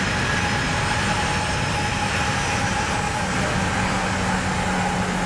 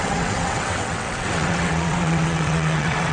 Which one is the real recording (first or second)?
first